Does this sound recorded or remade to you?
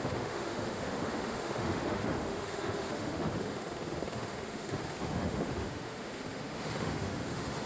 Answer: remade